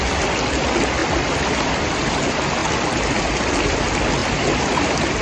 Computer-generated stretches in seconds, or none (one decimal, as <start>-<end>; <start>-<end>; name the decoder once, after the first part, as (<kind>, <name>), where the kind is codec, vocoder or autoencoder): 1.0-2.2 (vocoder, BigVGAN v2); 4.2-5.2